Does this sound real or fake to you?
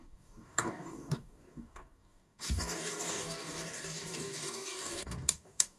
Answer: fake